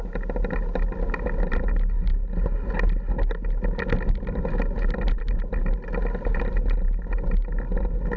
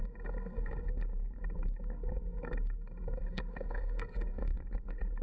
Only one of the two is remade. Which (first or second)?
second